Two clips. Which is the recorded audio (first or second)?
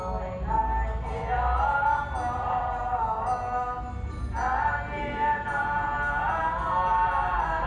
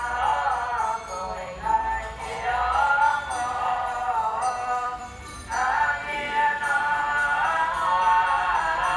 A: first